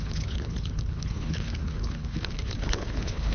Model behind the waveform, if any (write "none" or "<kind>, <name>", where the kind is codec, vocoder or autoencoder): codec, HILCodec